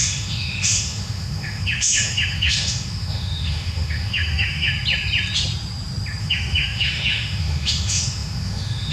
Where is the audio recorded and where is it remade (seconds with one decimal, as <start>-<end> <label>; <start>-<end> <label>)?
0.0-4.7 remade; 4.7-6.2 recorded; 6.2-8.9 remade